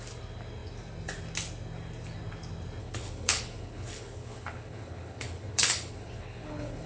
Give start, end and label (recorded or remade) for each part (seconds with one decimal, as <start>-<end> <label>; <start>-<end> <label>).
0.0-2.8 recorded; 2.8-6.9 remade